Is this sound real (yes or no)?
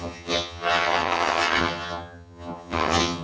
no